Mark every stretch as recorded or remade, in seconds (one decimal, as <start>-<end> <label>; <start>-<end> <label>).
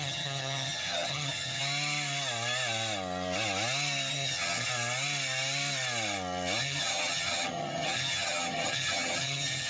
0.0-1.6 remade; 1.6-4.1 recorded; 4.1-4.7 remade; 4.7-6.6 recorded; 6.6-9.7 remade